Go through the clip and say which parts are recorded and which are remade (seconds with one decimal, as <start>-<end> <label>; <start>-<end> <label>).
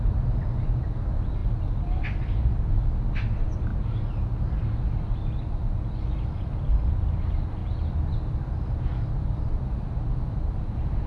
0.0-11.1 recorded